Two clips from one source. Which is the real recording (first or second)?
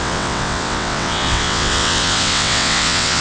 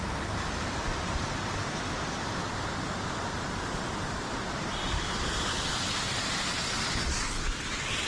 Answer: second